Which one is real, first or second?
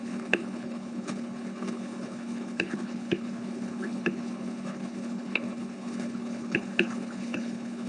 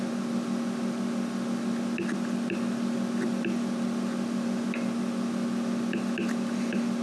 second